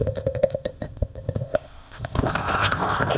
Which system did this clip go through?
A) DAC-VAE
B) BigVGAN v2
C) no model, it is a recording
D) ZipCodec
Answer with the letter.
D